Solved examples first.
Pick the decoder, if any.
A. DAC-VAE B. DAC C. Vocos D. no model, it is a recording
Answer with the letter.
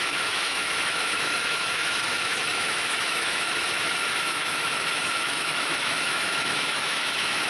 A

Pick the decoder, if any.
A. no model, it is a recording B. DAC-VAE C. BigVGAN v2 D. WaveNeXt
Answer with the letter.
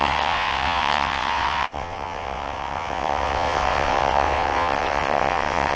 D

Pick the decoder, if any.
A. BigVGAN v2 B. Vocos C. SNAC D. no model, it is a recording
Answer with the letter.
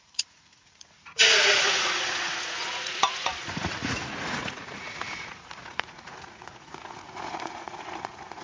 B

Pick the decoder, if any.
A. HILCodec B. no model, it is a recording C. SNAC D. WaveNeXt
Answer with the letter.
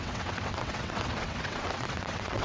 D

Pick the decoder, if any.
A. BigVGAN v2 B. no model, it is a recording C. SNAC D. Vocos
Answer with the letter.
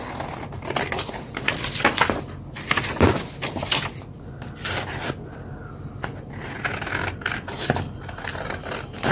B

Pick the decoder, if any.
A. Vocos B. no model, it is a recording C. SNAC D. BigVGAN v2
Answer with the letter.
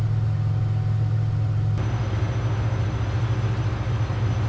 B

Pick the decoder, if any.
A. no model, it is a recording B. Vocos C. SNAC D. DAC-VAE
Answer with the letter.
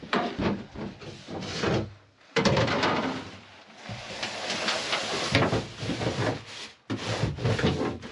A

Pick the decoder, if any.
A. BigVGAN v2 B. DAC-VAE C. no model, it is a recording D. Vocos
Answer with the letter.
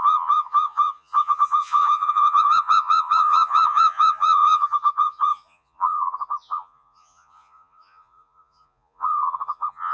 D